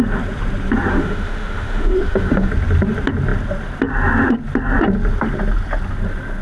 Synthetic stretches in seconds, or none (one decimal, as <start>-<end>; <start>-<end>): 0.9-2.5